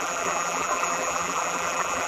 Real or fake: fake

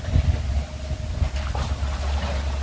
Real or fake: real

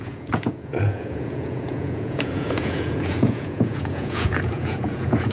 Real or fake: fake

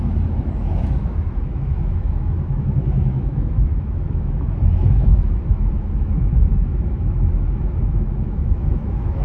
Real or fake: fake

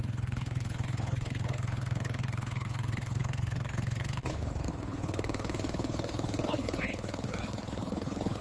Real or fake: fake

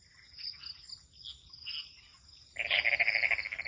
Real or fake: real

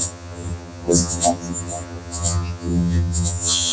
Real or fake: fake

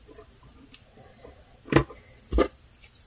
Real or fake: real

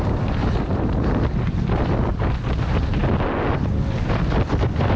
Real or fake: real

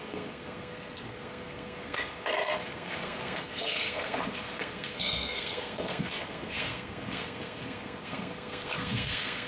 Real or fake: fake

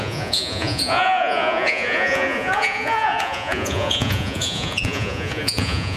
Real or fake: fake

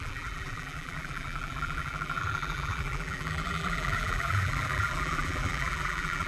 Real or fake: fake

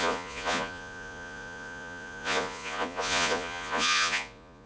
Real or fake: fake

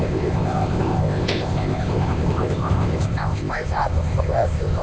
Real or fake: fake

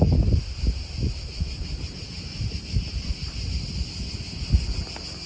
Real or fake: real